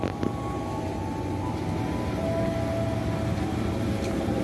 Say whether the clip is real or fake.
real